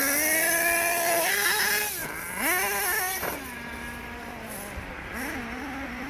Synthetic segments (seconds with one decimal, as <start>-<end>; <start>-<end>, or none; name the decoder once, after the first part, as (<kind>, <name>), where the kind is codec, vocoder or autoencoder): none